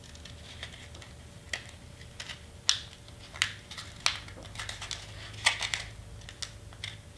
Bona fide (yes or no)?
yes